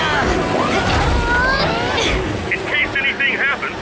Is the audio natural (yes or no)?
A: yes